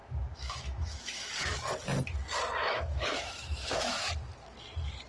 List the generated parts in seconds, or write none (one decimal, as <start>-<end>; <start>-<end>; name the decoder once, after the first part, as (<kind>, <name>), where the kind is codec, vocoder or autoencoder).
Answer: 0.0-1.3 (autoencoder, DAC-VAE); 2.6-4.1